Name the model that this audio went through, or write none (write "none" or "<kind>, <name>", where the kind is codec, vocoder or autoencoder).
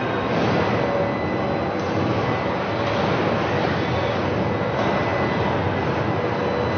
none